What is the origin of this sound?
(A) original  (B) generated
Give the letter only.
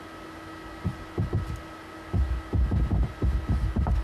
A